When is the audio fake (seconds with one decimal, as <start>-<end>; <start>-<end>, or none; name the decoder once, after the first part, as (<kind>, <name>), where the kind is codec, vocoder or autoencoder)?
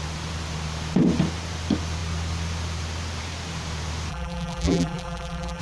4.1-5.6 (vocoder, BigVGAN v2)